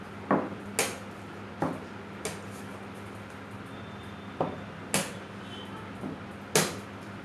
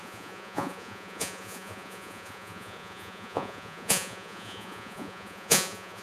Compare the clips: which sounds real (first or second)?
first